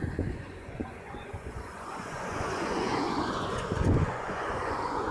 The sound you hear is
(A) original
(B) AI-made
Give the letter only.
B